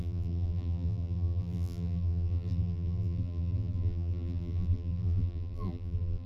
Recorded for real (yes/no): no